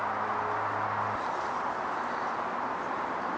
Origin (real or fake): real